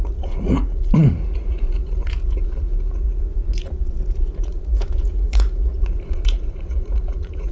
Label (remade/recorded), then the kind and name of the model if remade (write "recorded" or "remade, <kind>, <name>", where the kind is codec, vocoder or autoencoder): remade, vocoder, Vocos